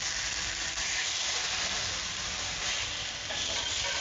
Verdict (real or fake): real